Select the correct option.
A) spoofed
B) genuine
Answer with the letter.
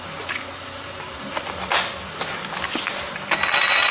B